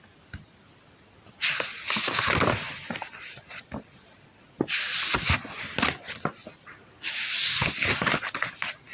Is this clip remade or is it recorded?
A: recorded